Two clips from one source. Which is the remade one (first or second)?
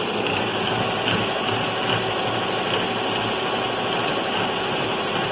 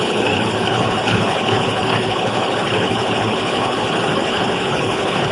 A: second